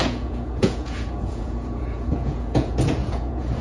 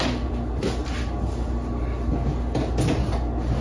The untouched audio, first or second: second